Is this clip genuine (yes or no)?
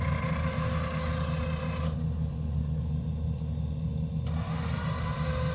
yes